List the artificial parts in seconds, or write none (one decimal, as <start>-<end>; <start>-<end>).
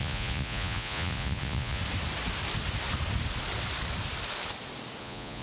0.0-1.8; 5.0-5.4